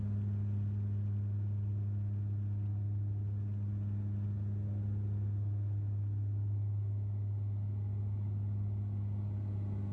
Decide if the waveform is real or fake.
real